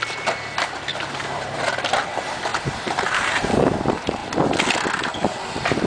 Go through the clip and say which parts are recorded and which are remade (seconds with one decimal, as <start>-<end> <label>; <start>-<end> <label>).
0.0-0.9 recorded; 0.9-1.6 remade; 1.6-2.5 recorded; 2.5-3.5 remade; 3.5-5.9 recorded